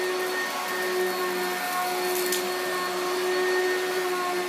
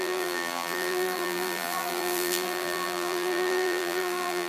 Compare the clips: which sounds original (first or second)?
first